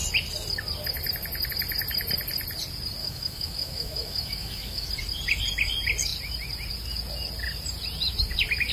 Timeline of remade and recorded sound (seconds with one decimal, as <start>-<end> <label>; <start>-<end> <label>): 0.0-3.0 recorded; 3.0-4.9 remade; 4.9-8.7 recorded